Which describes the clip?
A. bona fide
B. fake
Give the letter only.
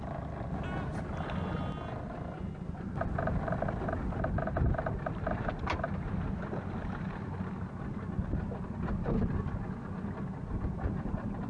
A